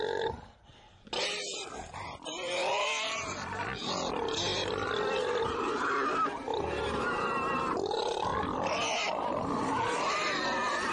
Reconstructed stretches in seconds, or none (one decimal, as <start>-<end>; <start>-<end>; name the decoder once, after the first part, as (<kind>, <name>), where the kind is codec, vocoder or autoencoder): 6.5-7.6 (vocoder, BigVGAN v2); 8.3-10.9